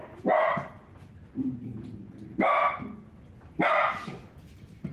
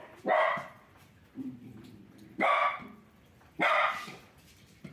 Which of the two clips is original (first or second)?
first